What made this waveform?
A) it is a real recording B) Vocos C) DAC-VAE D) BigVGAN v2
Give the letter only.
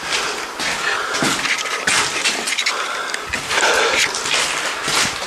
A